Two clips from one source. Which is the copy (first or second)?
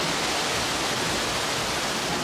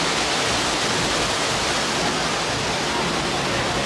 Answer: first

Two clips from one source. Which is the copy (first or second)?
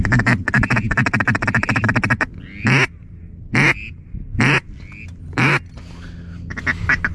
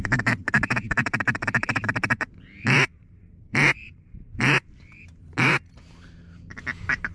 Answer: second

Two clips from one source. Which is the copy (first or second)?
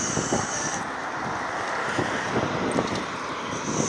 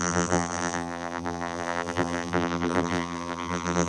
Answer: second